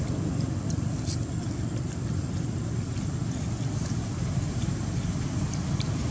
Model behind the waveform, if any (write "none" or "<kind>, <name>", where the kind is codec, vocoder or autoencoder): none